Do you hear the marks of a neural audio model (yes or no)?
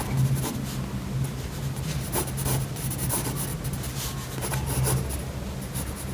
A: no